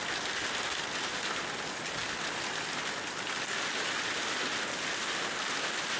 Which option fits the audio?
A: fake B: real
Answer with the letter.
B